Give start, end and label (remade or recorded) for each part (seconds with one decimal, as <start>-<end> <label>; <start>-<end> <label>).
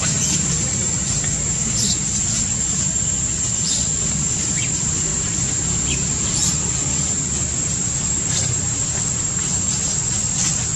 0.0-10.8 remade